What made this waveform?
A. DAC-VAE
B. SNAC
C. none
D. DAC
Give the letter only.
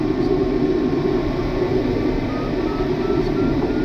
C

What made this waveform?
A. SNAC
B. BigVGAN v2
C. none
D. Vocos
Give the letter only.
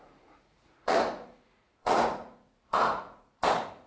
D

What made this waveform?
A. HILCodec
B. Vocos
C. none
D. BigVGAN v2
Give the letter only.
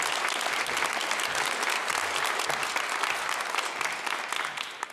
C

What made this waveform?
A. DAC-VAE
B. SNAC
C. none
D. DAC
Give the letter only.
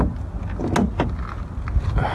C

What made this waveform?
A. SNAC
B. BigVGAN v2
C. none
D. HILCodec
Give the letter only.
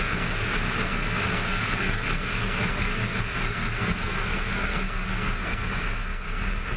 A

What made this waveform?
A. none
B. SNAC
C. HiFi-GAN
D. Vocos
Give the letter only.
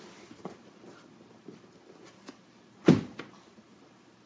A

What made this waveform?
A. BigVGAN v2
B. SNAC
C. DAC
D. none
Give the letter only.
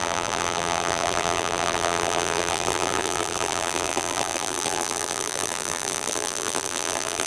A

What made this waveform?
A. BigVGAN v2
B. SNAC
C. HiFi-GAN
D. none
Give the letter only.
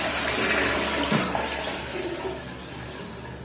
D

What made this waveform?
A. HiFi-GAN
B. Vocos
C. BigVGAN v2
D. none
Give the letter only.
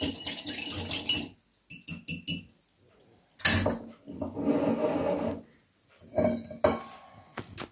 D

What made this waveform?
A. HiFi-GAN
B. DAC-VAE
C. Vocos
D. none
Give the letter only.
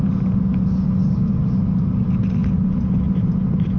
D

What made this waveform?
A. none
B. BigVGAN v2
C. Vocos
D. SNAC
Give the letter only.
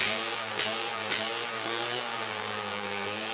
B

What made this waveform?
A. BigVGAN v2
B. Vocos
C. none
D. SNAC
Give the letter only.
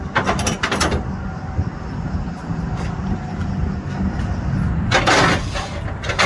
C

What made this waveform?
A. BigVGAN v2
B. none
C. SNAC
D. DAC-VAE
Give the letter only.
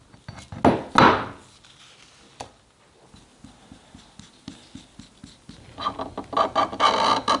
B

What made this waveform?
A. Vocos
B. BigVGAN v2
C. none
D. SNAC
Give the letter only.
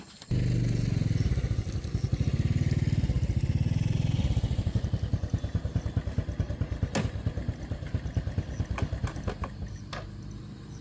C